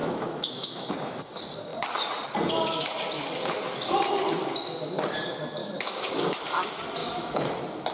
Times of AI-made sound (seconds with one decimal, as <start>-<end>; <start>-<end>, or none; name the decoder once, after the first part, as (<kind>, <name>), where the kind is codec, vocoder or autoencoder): 0.0-0.9 (autoencoder, DAC-VAE); 5.6-6.4; 7.0-7.5

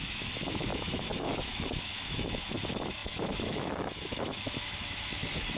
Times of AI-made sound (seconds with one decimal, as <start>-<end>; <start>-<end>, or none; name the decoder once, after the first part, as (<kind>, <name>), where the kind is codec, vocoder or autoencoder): 0.0-5.6 (autoencoder, DAC-VAE)

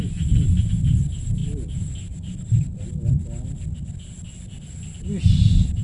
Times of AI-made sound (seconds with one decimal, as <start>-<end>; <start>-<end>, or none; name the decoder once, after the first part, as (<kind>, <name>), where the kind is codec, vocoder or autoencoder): none

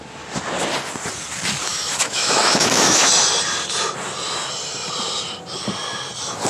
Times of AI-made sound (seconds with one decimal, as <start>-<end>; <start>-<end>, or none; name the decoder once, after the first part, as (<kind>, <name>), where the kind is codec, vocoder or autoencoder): 1.7-3.1 (autoencoder, DAC-VAE)